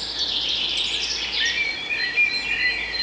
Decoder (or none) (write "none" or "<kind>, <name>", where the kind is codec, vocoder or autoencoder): none